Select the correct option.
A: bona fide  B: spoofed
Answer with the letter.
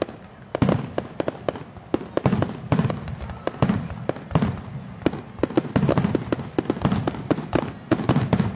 A